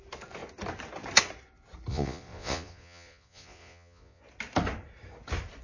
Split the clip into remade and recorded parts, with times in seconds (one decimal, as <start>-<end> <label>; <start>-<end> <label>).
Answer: 0.0-1.9 recorded; 1.9-4.2 remade; 4.2-5.6 recorded